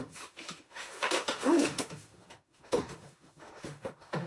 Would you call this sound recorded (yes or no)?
no